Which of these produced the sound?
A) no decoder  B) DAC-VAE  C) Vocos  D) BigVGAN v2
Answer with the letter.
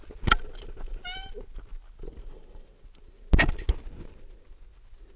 A